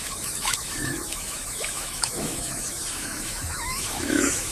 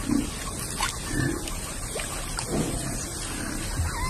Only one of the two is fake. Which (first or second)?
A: first